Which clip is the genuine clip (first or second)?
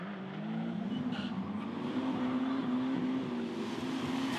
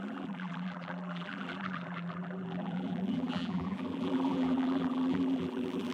first